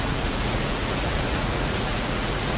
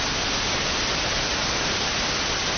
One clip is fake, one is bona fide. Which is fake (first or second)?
first